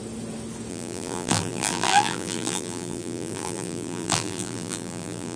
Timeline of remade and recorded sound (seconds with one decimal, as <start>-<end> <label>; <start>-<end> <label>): 0.0-0.7 recorded; 0.7-5.4 remade